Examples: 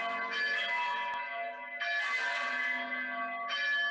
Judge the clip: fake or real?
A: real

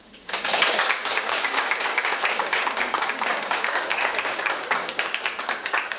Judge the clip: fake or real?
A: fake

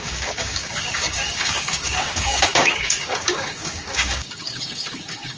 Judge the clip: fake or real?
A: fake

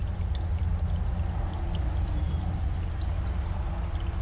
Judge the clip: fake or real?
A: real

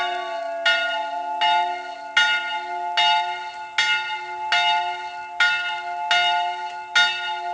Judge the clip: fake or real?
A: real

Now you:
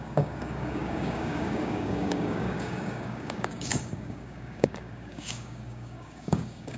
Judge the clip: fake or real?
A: fake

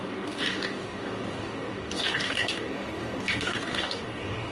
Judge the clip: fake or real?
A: fake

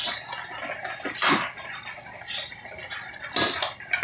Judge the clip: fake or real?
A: real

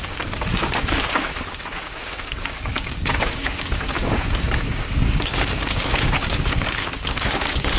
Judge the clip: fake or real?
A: fake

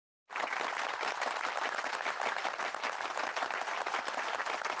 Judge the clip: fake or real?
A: real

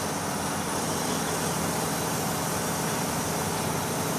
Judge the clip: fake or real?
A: real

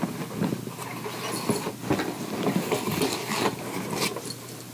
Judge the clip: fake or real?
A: real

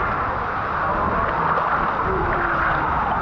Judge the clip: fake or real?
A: real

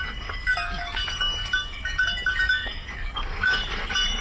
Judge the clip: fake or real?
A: fake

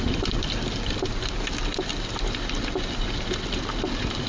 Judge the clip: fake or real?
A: real